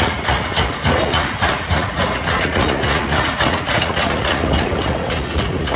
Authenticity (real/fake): fake